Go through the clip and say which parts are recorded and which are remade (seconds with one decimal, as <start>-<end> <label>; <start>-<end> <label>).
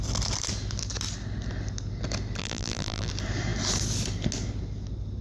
0.0-2.4 recorded; 2.4-3.1 remade; 3.1-5.2 recorded